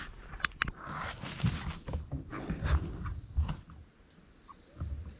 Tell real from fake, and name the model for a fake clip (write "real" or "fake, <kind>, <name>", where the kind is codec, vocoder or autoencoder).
real